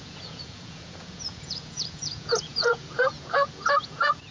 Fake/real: fake